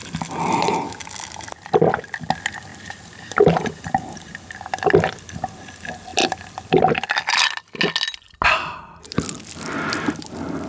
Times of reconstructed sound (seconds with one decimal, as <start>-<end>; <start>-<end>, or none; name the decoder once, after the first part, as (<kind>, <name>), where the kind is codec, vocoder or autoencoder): 2.7-4.3 (vocoder, BigVGAN v2)